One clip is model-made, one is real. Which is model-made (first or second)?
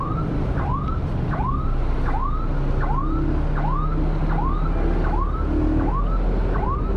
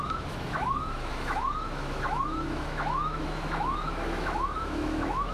second